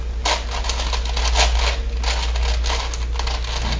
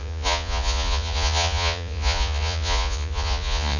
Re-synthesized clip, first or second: second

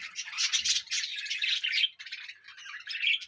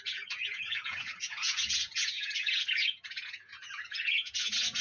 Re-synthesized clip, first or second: second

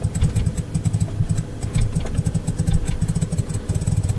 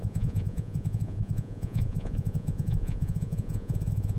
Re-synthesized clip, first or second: second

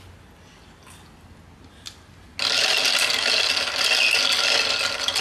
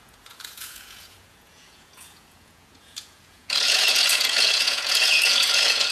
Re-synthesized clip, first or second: second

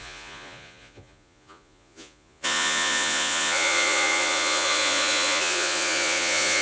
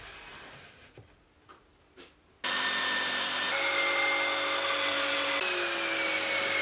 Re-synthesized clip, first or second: first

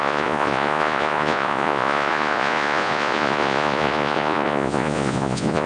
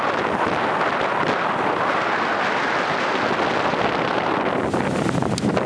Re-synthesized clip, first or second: first